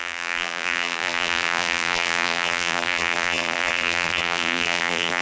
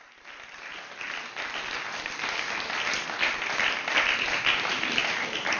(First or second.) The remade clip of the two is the first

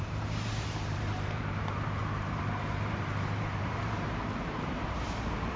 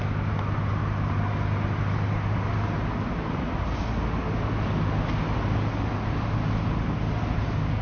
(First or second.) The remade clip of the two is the first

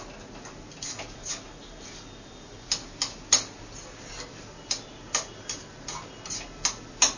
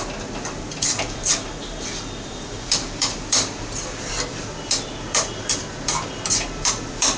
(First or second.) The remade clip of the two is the second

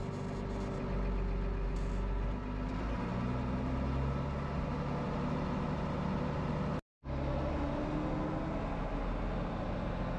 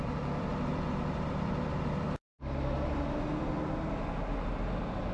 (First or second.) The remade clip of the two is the second